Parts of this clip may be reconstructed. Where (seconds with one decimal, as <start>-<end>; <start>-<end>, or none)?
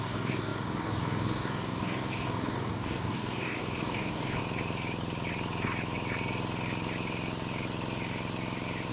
0.0-4.4